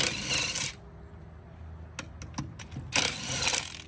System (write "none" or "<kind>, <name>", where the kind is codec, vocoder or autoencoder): none